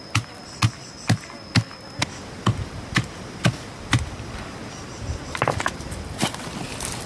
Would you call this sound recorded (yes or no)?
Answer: yes